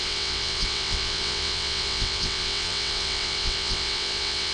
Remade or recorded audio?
remade